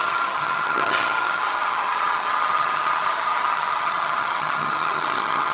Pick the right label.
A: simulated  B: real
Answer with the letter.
A